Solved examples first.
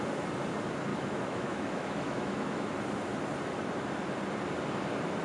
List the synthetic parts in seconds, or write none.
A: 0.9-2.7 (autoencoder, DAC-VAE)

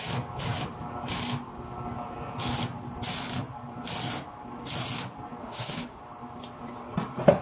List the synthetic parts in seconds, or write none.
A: 5.4-6.0 (autoencoder, DAC-VAE)

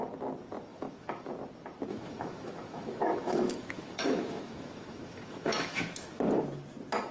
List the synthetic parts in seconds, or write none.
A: 0.7-1.3 (autoencoder, DAC-VAE); 1.9-6.2

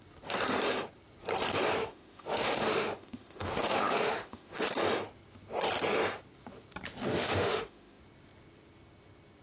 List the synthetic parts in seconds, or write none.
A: 1.8-4.7 (autoencoder, DAC-VAE); 7.1-8.0

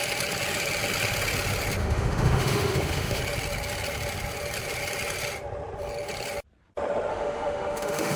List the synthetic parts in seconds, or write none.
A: 1.8-3.2 (autoencoder, DAC-VAE); 7.1-8.2

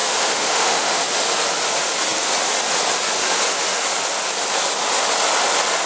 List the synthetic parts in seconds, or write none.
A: 0.0-1.0 (autoencoder, DAC-VAE)

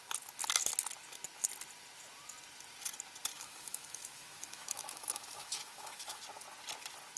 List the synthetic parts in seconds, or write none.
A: 3.3-6.2 (autoencoder, DAC-VAE)